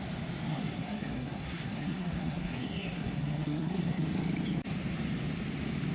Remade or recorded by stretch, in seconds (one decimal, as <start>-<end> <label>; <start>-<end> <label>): 0.0-0.5 recorded; 0.5-4.0 remade; 4.0-5.9 recorded